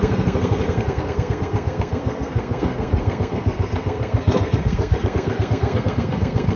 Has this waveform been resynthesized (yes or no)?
yes